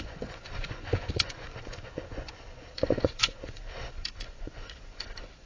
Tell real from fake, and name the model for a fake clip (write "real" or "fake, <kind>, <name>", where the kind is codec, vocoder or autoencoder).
fake, vocoder, Vocos